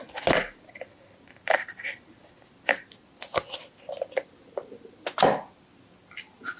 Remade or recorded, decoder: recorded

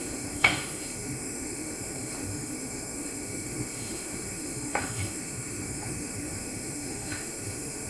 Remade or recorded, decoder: remade, autoencoder, DAC-VAE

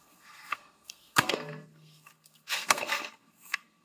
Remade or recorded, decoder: remade, codec, SNAC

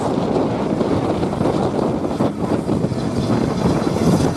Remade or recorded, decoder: recorded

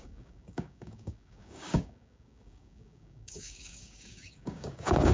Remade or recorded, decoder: remade, codec, DAC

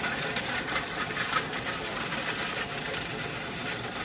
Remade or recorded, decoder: recorded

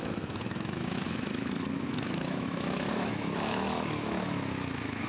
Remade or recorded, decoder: remade, autoencoder, DAC-VAE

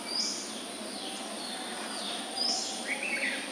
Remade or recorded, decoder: recorded